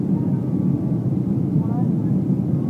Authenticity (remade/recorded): recorded